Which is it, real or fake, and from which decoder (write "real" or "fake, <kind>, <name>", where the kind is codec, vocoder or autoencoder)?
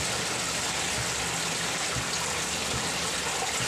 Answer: real